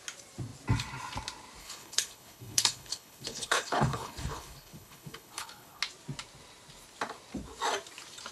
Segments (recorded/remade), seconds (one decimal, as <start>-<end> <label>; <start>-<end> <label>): 0.0-1.6 recorded; 1.6-5.8 remade; 5.8-8.3 recorded